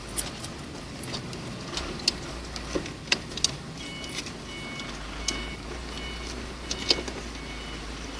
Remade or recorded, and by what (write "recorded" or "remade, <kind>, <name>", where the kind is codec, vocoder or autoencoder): recorded